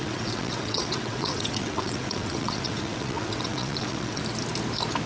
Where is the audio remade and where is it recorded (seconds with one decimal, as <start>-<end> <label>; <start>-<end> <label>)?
0.0-4.2 remade; 4.2-5.1 recorded